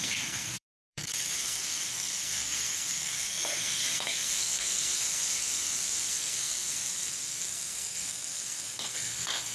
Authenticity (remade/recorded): remade